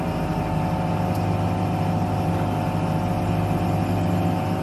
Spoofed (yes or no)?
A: no